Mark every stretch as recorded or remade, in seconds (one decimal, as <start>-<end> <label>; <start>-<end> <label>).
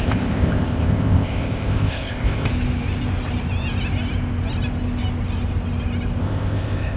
0.0-2.5 remade; 2.5-6.2 recorded; 6.2-7.0 remade